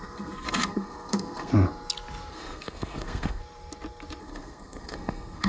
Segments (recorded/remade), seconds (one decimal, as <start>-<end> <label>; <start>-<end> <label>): 0.0-1.5 remade; 1.5-2.3 recorded; 2.3-3.4 remade; 3.4-4.2 recorded; 4.2-5.5 remade